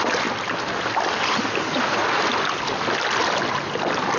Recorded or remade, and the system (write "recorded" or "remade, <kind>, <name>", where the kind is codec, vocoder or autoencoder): recorded